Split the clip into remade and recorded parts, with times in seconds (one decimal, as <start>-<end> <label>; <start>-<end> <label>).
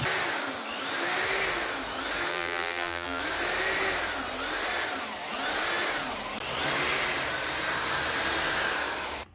0.0-2.3 recorded; 2.3-3.2 remade; 3.2-9.3 recorded